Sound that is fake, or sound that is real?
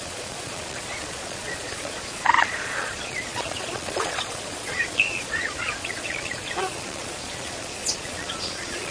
fake